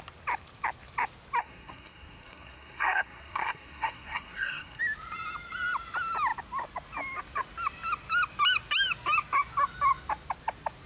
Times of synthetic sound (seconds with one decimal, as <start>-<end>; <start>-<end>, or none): 1.4-4.8